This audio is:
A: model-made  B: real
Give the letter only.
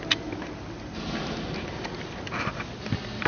B